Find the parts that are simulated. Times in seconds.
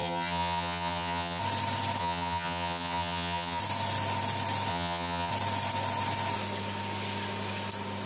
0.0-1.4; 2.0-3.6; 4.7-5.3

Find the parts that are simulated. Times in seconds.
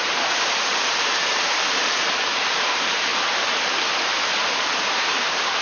0.0-3.1; 4.4-5.6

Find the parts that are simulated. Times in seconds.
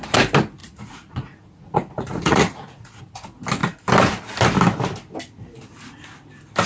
0.6-3.0